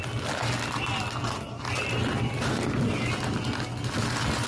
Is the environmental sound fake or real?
real